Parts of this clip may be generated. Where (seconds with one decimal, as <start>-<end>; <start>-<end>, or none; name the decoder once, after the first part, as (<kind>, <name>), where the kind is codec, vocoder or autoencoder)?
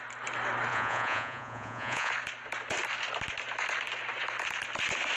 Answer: 0.7-2.1 (vocoder, Vocos)